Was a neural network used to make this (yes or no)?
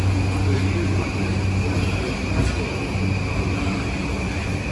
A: no